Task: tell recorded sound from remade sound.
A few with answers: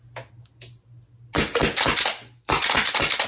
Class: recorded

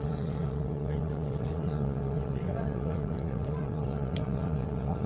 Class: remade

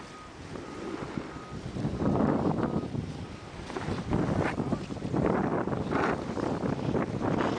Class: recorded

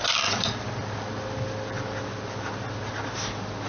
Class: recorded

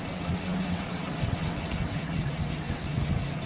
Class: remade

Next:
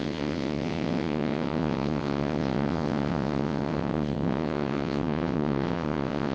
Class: remade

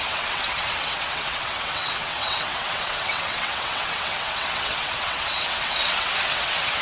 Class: remade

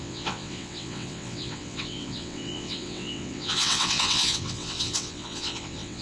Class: remade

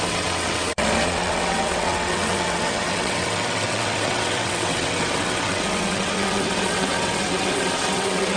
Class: remade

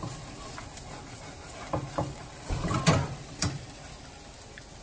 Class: recorded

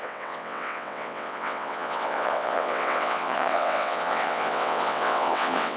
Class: remade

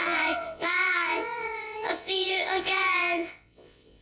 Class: remade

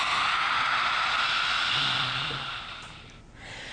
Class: recorded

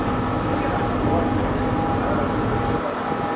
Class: recorded